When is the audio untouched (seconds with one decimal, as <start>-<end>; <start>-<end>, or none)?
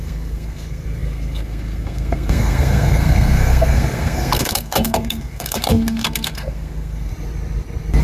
7.1-8.0